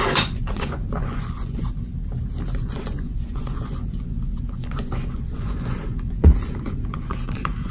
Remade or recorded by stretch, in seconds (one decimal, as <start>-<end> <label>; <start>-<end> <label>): 0.0-1.9 remade; 1.9-2.5 recorded; 2.5-7.7 remade